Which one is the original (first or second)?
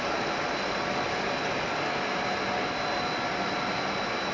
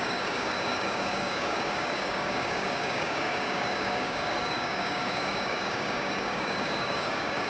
first